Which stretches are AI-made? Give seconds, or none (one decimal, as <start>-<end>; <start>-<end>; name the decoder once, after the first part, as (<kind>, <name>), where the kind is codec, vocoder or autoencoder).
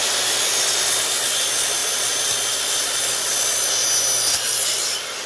1.8-3.7 (vocoder, BigVGAN v2)